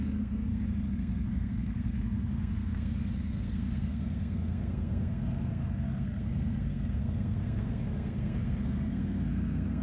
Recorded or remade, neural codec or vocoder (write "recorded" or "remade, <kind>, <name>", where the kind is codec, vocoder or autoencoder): remade, codec, SNAC